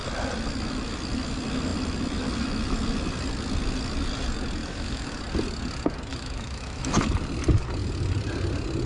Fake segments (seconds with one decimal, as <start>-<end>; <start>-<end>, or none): 4.6-5.2; 6.1-6.9